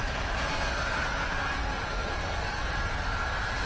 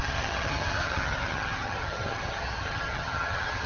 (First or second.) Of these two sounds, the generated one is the second